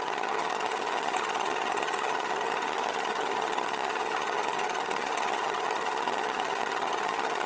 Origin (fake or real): fake